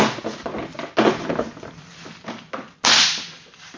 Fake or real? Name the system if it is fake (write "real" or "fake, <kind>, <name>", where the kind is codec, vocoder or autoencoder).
real